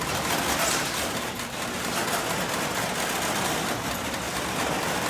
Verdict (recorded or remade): recorded